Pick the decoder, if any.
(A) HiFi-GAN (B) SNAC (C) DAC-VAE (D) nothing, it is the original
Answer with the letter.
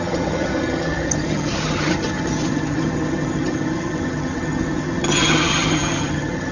A